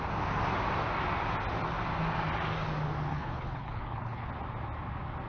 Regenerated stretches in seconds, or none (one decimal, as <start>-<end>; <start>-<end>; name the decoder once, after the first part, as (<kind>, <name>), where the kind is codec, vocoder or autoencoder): 3.1-4.3 (codec, HILCodec)